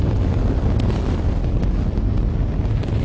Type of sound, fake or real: real